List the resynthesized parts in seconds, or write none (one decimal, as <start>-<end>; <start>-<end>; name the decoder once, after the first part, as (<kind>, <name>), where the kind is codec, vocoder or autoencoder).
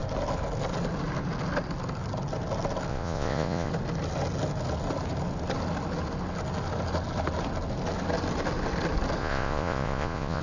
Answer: 2.9-3.7 (vocoder, Vocos); 9.2-10.4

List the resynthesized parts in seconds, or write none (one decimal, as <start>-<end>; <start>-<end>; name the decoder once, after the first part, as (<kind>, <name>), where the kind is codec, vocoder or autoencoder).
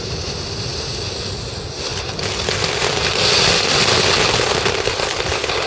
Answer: none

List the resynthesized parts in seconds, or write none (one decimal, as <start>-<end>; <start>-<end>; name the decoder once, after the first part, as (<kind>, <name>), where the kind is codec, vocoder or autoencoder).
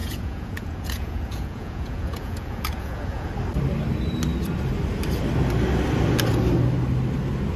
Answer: 0.0-3.3 (vocoder, Vocos)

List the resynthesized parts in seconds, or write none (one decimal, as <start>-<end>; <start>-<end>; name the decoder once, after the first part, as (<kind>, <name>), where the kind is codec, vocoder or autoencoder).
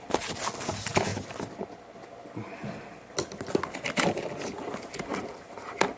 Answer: none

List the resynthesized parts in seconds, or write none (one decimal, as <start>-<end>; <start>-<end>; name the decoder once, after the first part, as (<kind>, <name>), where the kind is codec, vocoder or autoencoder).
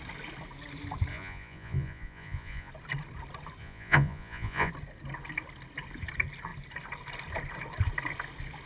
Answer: 1.1-2.7 (vocoder, Vocos); 3.6-4.7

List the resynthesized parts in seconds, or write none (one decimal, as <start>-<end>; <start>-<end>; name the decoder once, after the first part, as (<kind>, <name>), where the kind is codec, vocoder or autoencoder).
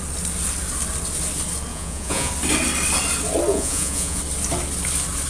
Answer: 1.7-2.3 (vocoder, Vocos); 3.5-4.2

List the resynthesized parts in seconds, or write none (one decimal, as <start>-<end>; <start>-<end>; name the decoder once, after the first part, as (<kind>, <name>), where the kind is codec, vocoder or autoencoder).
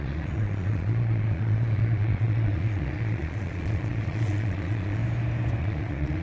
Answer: 0.0-5.0 (vocoder, Vocos); 5.6-6.2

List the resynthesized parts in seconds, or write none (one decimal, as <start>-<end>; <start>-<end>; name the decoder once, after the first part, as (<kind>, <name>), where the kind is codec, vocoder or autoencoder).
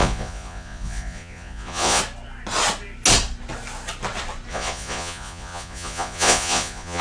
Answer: 0.0-2.0 (vocoder, Vocos); 4.5-7.0